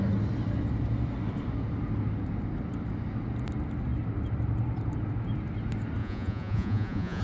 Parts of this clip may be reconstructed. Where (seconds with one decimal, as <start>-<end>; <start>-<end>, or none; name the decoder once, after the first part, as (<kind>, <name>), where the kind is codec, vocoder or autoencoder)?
6.0-7.2 (vocoder, Vocos)